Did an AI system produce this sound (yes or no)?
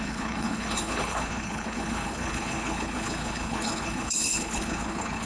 yes